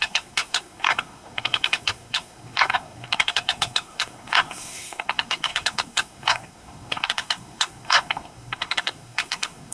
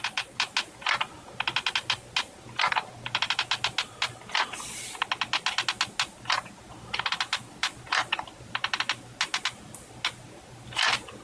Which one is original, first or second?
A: second